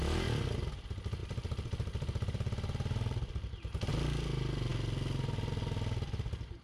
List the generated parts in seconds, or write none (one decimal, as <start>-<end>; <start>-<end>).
1.2-3.9